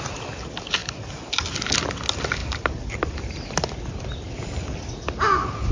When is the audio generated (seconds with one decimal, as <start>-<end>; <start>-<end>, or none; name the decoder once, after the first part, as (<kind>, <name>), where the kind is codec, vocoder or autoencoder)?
none